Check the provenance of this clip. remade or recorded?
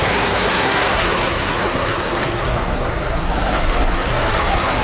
remade